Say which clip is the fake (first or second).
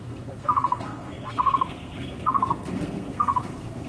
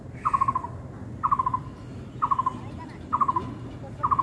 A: first